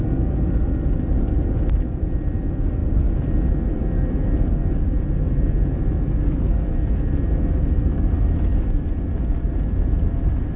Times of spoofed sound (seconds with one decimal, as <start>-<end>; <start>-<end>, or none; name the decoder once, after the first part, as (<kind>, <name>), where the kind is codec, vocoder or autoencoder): none